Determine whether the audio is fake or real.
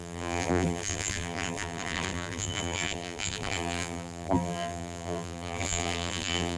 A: fake